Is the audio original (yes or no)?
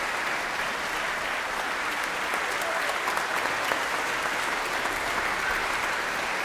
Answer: yes